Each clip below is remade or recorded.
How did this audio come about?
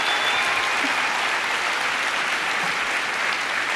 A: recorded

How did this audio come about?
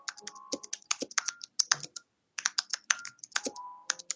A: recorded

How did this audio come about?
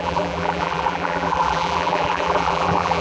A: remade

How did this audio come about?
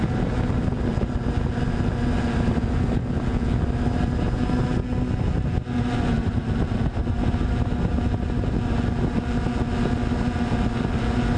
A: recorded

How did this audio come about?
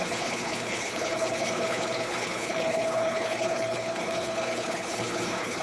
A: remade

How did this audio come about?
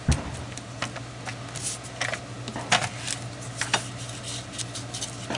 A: recorded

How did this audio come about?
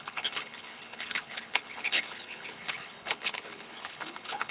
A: remade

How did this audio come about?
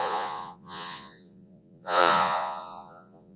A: remade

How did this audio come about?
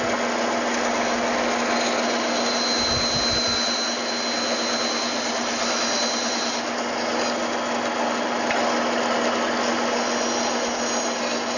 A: recorded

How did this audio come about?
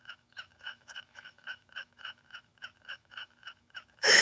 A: remade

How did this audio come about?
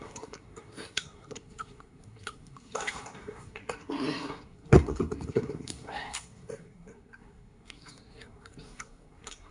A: remade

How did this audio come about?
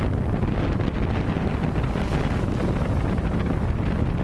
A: recorded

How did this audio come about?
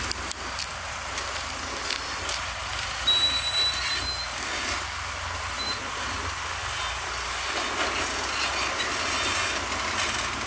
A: recorded